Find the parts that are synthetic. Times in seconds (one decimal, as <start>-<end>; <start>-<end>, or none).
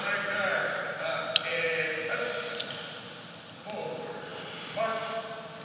none